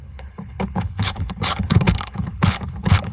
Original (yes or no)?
no